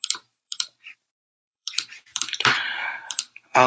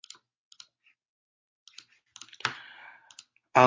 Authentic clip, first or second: second